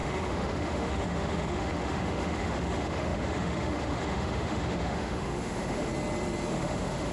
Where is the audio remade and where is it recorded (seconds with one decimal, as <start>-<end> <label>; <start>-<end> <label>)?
0.0-5.9 remade; 5.9-6.5 recorded; 6.5-7.1 remade